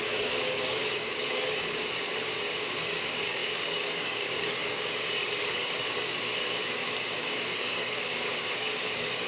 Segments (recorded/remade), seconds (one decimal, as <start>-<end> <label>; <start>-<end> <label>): 0.0-9.3 remade